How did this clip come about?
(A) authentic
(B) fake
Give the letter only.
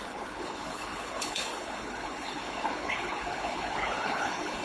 B